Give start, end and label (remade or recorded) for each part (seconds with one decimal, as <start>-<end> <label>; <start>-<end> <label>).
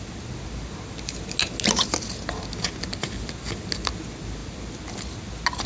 0.0-5.7 recorded